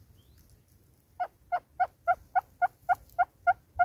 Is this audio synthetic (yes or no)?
no